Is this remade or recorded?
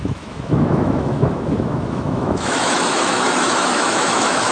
remade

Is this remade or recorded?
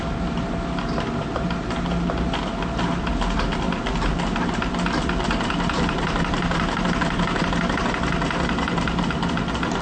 recorded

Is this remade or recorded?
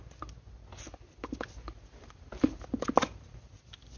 recorded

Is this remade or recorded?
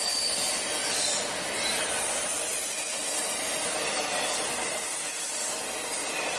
recorded